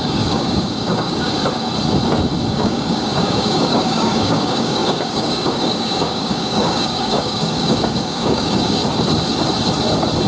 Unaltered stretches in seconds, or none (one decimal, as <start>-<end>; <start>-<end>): 1.3-2.5; 8.8-10.3